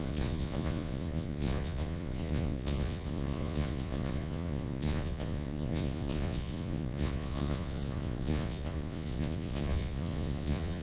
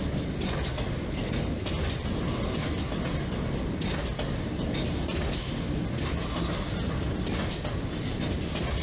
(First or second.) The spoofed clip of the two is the first